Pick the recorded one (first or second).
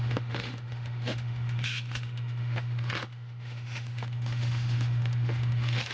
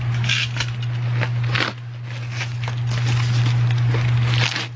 second